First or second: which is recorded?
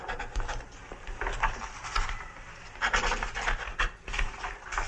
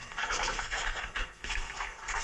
first